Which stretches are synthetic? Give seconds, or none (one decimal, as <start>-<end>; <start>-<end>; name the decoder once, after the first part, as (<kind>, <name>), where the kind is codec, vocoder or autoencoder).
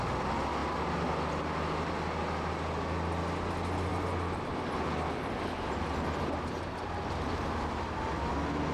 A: none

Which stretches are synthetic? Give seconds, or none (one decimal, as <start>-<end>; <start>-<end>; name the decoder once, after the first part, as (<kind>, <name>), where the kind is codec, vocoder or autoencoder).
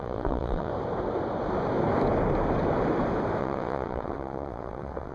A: 0.0-0.7 (vocoder, WaveNeXt); 3.4-5.1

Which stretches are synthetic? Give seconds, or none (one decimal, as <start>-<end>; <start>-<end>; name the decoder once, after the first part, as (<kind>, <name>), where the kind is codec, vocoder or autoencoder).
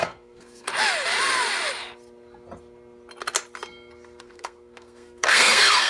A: 0.0-0.7 (codec, SNAC); 4.2-5.9